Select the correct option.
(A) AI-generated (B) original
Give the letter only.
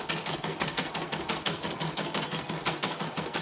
A